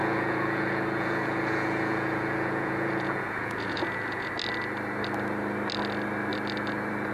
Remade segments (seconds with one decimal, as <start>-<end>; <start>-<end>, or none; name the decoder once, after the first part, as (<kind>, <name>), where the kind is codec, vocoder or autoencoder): 0.0-4.3 (vocoder, Vocos)